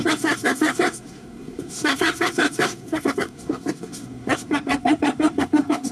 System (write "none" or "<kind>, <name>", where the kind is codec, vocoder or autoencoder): codec, SNAC